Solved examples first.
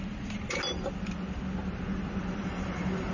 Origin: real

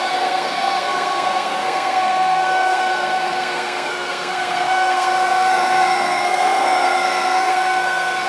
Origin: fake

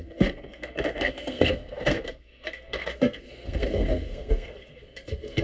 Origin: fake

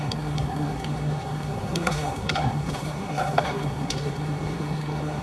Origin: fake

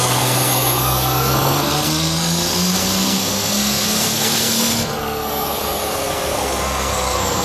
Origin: fake